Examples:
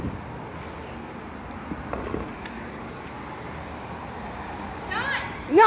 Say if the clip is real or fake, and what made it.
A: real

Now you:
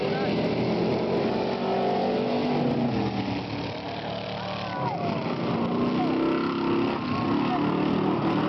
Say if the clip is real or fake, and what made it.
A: real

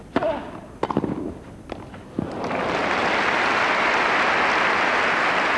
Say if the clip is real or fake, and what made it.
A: real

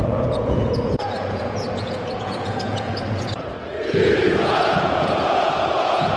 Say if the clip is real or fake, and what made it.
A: fake, vocoder, Vocos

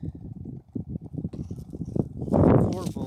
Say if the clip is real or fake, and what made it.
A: real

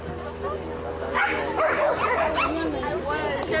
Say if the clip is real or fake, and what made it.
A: real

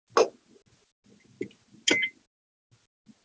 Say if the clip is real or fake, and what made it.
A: real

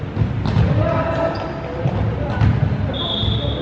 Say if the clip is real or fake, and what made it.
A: real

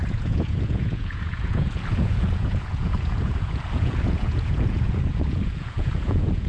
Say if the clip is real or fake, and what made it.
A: fake, vocoder, Vocos